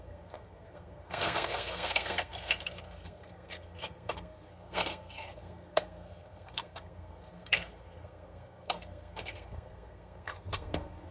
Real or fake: fake